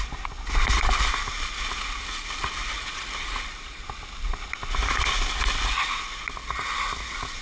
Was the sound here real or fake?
real